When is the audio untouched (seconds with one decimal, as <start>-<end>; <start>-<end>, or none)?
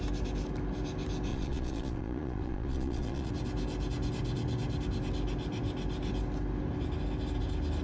0.0-1.3; 3.3-7.8